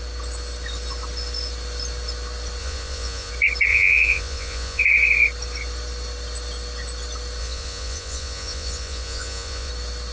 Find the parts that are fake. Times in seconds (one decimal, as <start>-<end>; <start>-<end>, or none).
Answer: 2.6-3.3; 3.7-4.8; 7.4-9.7